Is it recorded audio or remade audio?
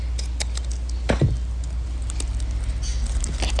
recorded